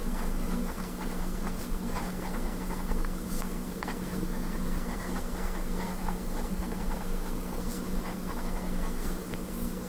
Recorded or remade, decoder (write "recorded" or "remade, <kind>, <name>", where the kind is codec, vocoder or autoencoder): remade, codec, SNAC